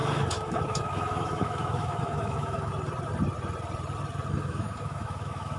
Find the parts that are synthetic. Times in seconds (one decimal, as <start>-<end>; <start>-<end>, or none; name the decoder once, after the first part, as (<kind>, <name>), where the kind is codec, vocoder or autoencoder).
0.0-2.7 (autoencoder, DAC-VAE); 4.3-5.6